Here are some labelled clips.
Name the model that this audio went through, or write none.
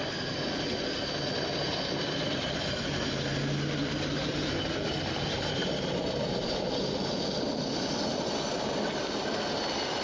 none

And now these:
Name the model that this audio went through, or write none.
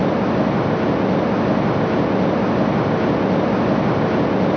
none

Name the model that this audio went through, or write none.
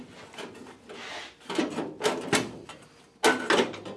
none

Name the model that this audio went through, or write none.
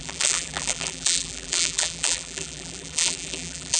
vocoder, BigVGAN v2